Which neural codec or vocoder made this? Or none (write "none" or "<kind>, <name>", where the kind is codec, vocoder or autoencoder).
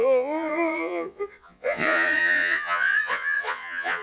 vocoder, Vocos